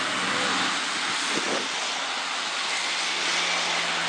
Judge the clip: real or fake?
real